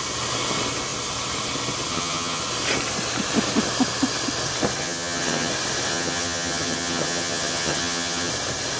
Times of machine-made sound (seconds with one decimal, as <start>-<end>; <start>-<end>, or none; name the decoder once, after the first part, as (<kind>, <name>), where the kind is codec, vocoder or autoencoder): 1.9-2.4 (vocoder, HiFi-GAN); 4.8-5.5; 5.9-8.3